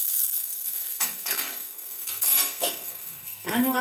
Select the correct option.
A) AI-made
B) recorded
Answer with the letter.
A